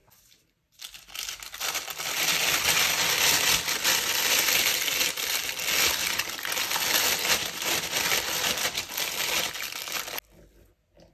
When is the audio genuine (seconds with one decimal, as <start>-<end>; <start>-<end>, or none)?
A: 0.0-11.1